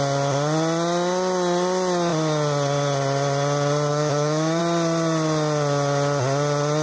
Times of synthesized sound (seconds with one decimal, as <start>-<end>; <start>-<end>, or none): 3.9-4.6